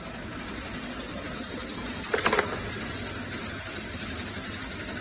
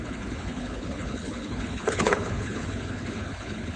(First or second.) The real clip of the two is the first